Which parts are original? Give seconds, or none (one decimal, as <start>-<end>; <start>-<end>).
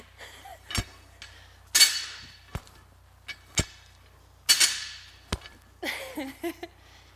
0.0-7.2